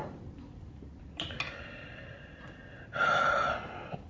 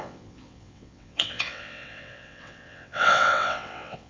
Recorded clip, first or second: first